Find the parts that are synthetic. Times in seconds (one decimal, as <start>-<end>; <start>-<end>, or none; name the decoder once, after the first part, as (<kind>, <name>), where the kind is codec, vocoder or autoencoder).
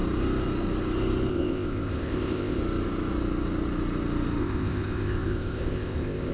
1.3-2.6 (codec, ZipCodec); 4.4-6.3